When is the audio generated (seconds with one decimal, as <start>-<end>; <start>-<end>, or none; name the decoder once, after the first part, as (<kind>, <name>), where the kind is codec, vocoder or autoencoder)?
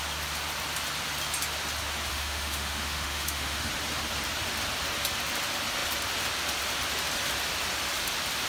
2.1-3.7 (autoencoder, DAC-VAE)